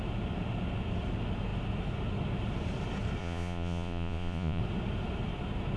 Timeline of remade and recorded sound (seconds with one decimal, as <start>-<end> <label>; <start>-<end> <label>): 0.0-3.2 recorded; 3.2-4.6 remade; 4.6-5.8 recorded